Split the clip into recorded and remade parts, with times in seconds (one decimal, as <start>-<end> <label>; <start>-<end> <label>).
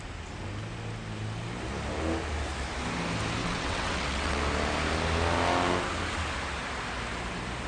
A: 0.0-3.4 recorded; 3.4-4.4 remade; 4.4-7.7 recorded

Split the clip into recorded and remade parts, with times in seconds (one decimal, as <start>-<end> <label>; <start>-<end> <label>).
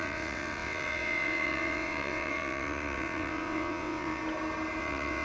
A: 0.0-4.2 remade; 4.2-4.8 recorded; 4.8-5.2 remade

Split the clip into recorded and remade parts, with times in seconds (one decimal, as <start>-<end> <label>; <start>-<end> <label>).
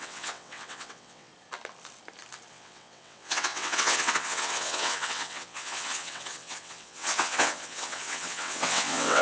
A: 0.0-1.3 remade; 1.3-2.5 recorded; 2.5-9.2 remade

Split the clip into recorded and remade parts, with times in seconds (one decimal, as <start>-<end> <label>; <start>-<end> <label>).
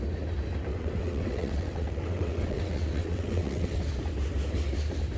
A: 0.0-0.7 recorded; 0.7-3.8 remade; 3.8-5.2 recorded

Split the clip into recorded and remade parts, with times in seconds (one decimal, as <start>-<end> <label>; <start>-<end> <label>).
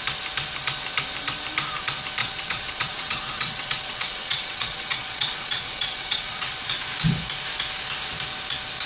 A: 0.0-2.2 recorded; 2.2-6.7 remade; 6.7-8.9 recorded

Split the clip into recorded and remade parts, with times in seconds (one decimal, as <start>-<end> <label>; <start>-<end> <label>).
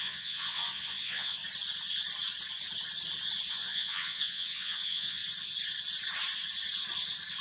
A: 0.0-1.4 remade; 1.4-3.5 recorded; 3.5-5.2 remade; 5.2-7.4 recorded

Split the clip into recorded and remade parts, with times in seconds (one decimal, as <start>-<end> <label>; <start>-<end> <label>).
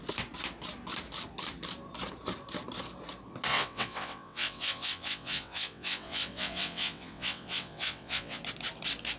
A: 0.0-3.5 recorded; 3.5-8.4 remade; 8.4-9.2 recorded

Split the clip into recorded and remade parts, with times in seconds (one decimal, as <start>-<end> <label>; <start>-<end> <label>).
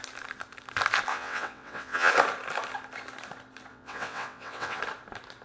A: 0.0-1.1 recorded; 1.1-2.1 remade; 2.1-3.7 recorded; 3.7-4.8 remade; 4.8-5.4 recorded